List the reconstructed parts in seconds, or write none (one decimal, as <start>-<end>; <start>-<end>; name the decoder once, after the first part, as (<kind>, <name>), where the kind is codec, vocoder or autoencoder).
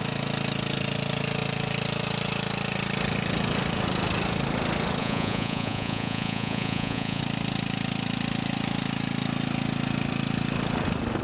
5.0-7.2 (vocoder, Vocos)